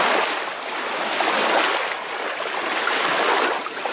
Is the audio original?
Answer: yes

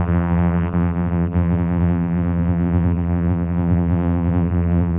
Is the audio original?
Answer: no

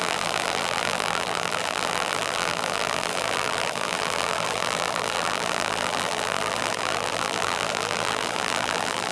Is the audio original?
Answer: no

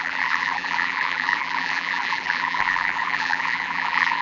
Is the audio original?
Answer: no